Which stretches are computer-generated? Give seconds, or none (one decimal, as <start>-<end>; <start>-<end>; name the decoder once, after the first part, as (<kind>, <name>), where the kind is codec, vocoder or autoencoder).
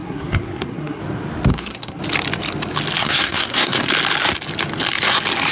0.0-1.0 (codec, SNAC); 1.5-2.0; 3.0-3.9